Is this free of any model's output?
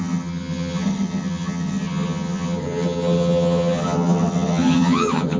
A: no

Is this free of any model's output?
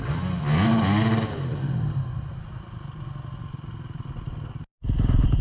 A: yes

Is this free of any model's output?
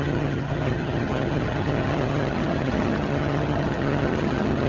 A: no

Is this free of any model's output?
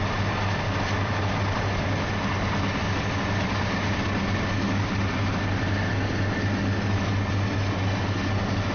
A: yes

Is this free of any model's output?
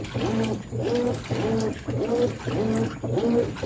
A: yes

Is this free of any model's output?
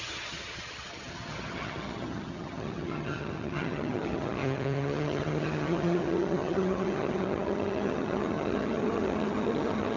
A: no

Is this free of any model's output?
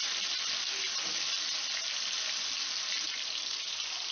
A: yes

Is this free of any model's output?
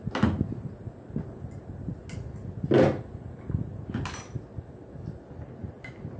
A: yes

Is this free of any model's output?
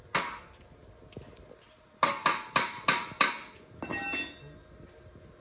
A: yes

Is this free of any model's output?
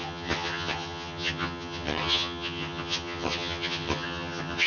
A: no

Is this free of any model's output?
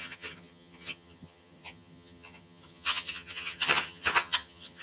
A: no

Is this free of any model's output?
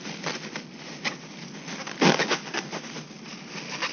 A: yes